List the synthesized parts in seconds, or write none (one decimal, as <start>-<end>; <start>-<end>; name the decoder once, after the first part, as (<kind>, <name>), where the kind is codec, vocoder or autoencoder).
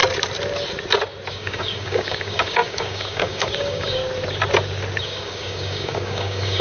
1.3-4.0 (codec, DAC); 5.0-6.6